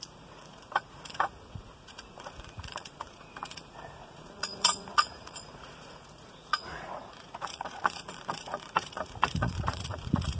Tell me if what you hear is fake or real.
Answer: fake